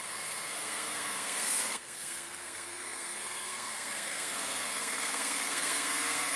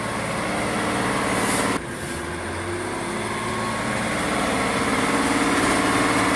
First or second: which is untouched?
second